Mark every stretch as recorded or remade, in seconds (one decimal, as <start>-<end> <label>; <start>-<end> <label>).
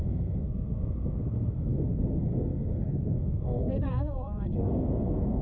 0.0-5.4 remade